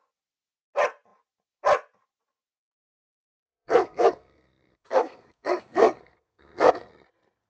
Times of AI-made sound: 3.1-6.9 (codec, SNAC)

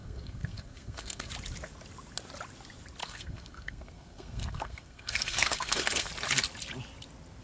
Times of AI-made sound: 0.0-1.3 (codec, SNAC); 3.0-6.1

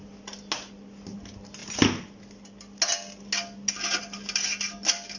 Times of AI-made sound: none

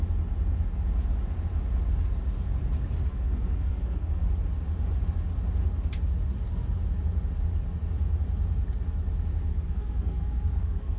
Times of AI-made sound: 3.1-4.2 (codec, SNAC); 9.5-11.0

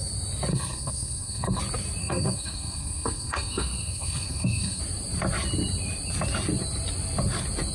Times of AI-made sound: 0.5-1.6 (codec, SNAC); 2.0-4.8

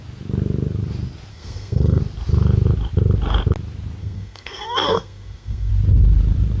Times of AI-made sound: 1.3-2.0 (codec, SNAC); 4.0-5.7

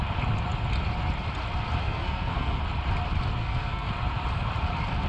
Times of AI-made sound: 1.8-2.6 (codec, SNAC); 3.4-3.9

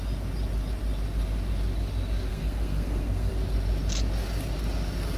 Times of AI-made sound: 2.3-3.3 (codec, SNAC)